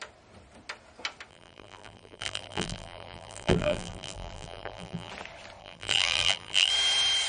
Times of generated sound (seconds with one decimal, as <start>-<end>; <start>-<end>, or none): 1.3-5.1; 5.6-6.7